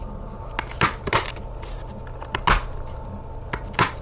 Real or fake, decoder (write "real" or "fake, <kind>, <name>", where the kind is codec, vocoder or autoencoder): real